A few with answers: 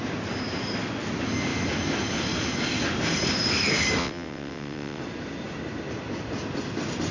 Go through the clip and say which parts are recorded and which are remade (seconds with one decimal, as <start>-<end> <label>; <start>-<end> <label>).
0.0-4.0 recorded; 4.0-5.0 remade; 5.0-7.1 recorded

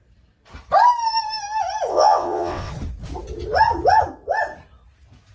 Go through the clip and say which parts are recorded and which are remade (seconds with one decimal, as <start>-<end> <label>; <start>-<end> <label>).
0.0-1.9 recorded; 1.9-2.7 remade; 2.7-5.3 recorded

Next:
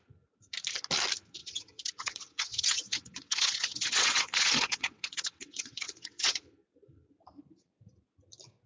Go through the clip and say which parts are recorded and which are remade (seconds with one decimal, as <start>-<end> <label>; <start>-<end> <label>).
0.0-1.4 recorded; 1.4-6.4 remade; 6.4-8.7 recorded

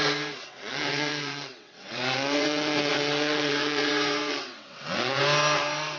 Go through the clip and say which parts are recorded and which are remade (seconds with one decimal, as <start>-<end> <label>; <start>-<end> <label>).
0.0-0.4 recorded; 0.4-3.9 remade; 3.9-4.3 recorded; 4.3-5.2 remade; 5.2-6.0 recorded

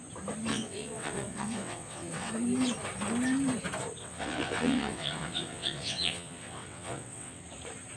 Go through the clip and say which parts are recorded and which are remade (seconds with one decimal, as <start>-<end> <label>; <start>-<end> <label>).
0.0-0.5 recorded; 0.5-2.3 remade; 2.3-4.0 recorded; 4.0-7.4 remade; 7.4-8.0 recorded

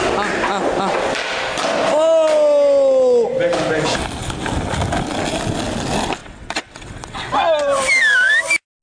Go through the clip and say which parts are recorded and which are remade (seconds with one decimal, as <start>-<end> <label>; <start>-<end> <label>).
0.0-6.2 recorded; 6.2-7.3 remade; 7.3-8.8 recorded

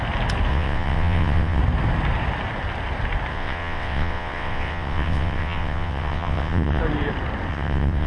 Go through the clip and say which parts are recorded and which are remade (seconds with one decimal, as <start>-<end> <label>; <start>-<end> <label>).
0.0-0.5 recorded; 0.5-1.6 remade; 1.6-3.3 recorded; 3.3-6.8 remade; 6.8-7.5 recorded; 7.5-8.1 remade